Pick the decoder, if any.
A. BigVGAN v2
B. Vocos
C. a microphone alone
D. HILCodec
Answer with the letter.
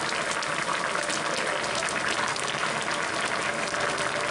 C